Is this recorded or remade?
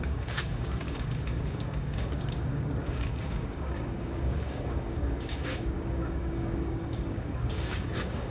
remade